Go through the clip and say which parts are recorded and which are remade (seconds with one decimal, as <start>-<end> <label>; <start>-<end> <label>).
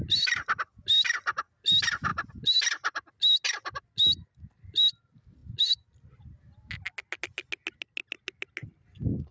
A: 0.0-9.3 recorded